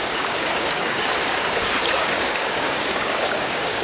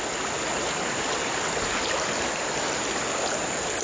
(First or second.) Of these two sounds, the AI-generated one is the first